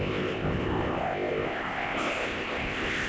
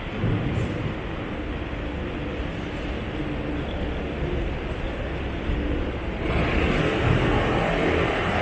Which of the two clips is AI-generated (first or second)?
first